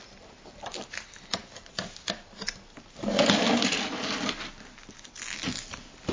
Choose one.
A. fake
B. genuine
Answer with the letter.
B